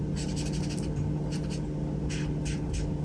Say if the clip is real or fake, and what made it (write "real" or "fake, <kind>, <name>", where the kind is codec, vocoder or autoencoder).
real